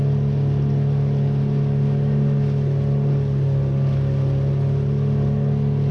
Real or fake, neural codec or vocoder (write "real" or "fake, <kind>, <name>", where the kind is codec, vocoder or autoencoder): real